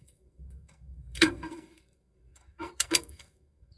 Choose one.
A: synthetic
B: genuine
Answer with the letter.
A